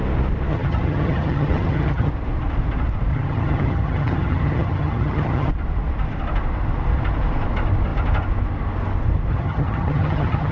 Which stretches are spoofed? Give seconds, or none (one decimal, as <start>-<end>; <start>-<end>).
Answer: 0.5-2.1; 3.1-5.5; 9.3-10.5